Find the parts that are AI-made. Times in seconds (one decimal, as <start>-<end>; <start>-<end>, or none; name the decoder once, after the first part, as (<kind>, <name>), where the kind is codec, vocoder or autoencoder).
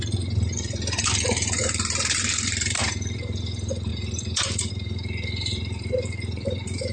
0.0-6.9 (vocoder, BigVGAN v2)